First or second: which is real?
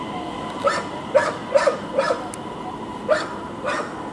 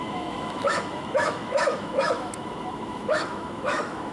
first